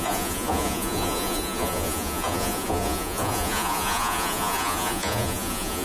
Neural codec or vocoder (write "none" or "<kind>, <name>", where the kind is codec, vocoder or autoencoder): vocoder, Vocos